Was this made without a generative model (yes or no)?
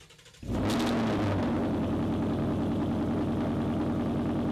yes